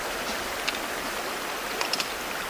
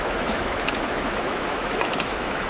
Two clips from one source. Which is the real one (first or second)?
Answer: first